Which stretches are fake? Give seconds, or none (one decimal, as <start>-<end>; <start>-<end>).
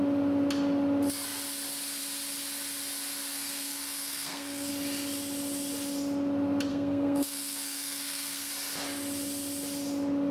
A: 3.3-4.7; 6.7-8.5